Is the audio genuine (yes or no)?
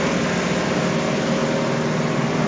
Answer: yes